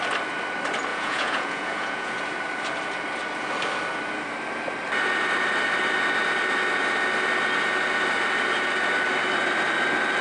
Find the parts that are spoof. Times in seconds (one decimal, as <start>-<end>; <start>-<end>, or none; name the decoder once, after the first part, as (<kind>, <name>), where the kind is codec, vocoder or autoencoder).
0.9-2.2 (vocoder, Vocos)